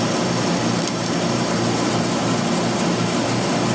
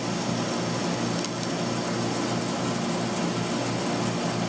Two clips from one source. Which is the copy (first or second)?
first